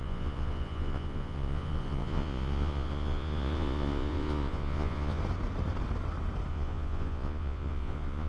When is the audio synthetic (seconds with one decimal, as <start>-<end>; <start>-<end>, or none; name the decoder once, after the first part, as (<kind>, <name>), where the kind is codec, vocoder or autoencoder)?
0.0-5.2 (vocoder, Vocos); 6.5-8.3